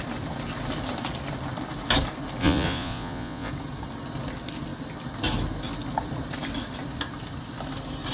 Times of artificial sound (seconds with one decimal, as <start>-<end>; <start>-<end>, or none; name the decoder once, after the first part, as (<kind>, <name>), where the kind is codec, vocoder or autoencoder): 2.4-3.5 (vocoder, Vocos)